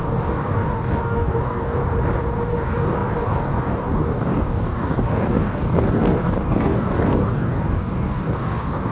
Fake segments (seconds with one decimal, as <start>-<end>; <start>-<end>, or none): 0.0-1.8; 2.5-8.9